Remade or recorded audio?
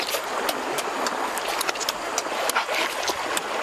recorded